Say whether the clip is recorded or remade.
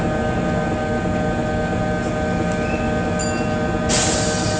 recorded